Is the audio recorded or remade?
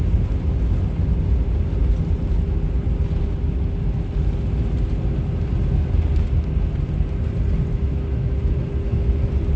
recorded